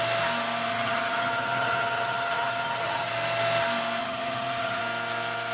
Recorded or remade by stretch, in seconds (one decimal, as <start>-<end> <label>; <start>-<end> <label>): 0.0-0.7 recorded; 0.7-3.1 remade; 3.1-4.0 recorded; 4.0-4.8 remade; 4.8-5.5 recorded